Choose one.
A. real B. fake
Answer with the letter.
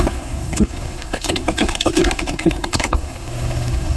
B